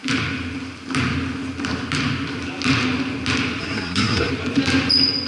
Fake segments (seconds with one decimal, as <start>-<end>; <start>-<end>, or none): 3.6-4.3